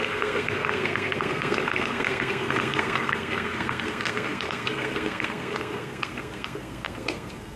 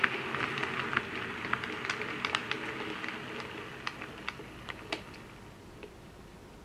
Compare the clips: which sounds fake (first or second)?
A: first